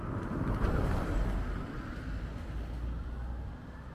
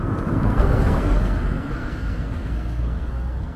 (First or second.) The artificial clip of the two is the second